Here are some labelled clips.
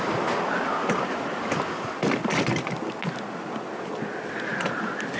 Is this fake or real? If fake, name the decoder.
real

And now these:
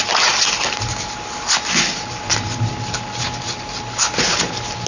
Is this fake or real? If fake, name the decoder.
real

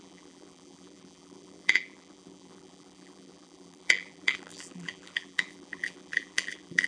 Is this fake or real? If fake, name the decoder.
fake, vocoder, BigVGAN v2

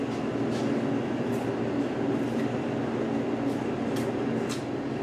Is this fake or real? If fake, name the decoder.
real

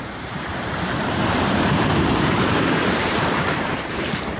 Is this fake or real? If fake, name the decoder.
fake, vocoder, BigVGAN v2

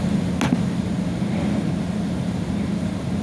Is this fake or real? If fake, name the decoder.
real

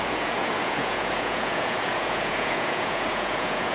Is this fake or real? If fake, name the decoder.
fake, vocoder, Vocos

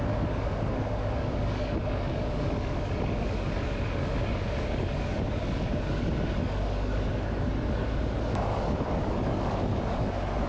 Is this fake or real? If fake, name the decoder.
fake, codec, DAC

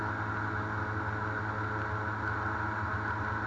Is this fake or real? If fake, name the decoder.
real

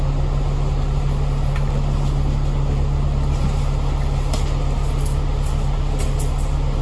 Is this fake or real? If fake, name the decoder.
real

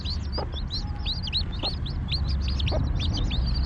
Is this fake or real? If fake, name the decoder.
real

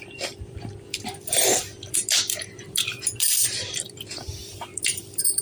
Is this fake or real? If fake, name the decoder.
fake, vocoder, BigVGAN v2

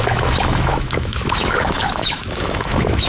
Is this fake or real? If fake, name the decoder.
fake, autoencoder, DAC-VAE